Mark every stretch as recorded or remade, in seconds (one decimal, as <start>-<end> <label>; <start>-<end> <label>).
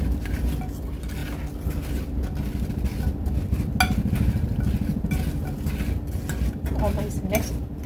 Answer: 0.0-7.9 recorded